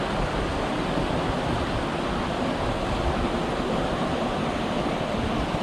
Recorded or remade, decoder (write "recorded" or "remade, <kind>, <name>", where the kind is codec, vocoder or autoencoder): recorded